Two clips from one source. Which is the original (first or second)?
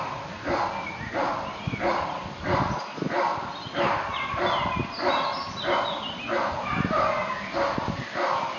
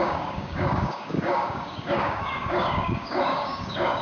first